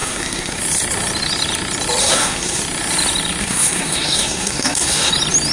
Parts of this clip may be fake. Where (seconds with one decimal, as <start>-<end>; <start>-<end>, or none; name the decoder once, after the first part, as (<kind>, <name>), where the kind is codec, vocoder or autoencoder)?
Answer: 0.0-0.6 (codec, SNAC); 2.0-2.6; 3.4-5.1